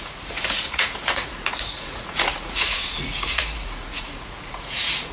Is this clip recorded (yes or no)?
no